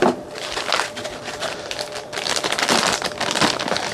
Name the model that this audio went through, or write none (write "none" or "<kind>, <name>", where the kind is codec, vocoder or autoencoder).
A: none